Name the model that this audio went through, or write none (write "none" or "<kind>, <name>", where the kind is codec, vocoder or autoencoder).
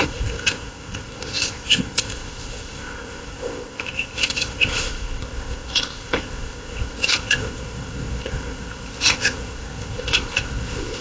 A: codec, ZipCodec